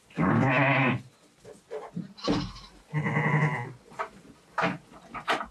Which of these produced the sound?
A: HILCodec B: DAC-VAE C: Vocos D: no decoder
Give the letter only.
D